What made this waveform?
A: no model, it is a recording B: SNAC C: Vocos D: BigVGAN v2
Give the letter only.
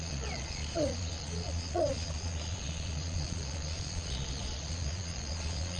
C